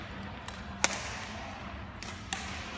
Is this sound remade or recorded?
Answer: recorded